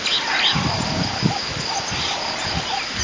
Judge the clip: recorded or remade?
recorded